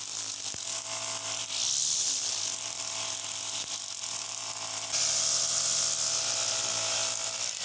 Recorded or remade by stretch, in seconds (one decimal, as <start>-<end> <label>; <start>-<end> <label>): 0.0-1.4 recorded; 1.4-2.4 remade; 2.4-7.6 recorded